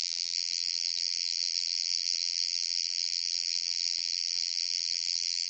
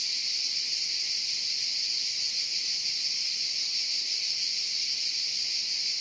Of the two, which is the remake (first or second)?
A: first